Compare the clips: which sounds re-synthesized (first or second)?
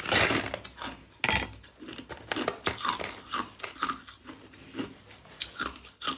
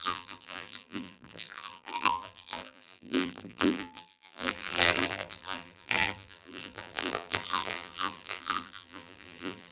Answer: second